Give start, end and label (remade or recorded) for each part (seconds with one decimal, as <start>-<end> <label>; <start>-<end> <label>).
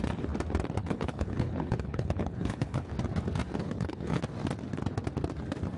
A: 0.0-0.8 recorded; 0.8-2.9 remade; 2.9-3.6 recorded; 3.6-4.2 remade; 4.2-5.8 recorded